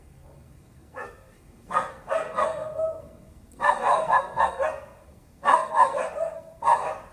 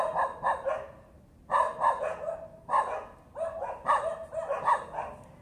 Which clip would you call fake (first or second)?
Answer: first